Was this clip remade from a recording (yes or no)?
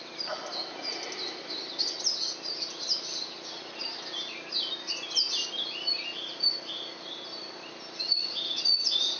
no